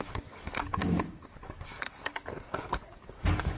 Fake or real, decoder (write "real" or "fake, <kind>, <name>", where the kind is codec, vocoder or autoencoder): fake, codec, DAC